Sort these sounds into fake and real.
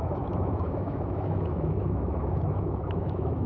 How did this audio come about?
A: fake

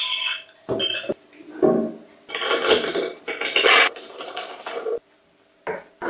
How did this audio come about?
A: real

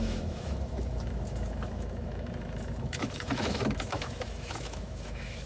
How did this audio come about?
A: fake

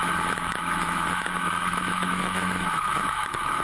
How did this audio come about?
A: fake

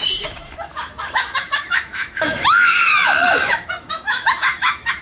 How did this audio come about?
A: fake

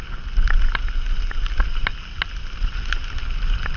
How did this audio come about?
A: real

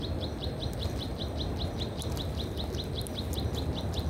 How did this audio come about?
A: real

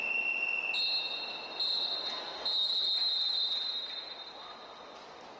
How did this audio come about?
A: real